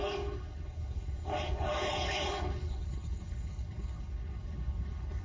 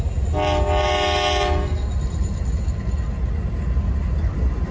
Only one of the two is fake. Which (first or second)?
first